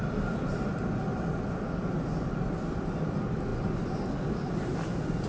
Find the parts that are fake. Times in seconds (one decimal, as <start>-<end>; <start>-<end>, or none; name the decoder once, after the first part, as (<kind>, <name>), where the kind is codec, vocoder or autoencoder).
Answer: none